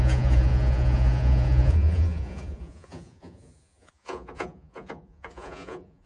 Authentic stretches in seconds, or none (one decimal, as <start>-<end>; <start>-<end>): none